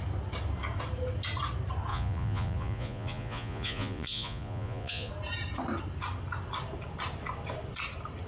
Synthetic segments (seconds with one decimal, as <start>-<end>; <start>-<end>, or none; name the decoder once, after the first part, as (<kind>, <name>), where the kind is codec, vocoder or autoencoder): 1.9-5.1 (vocoder, Vocos)